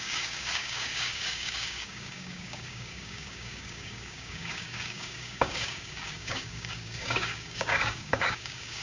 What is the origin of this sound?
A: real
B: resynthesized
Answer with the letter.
B